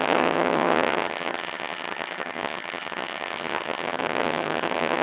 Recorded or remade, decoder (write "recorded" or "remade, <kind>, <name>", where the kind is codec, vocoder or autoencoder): remade, vocoder, HiFi-GAN